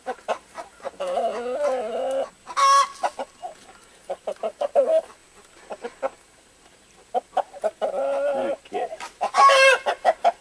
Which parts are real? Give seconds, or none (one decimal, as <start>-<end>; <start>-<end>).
1.3-3.9; 5.2-6.2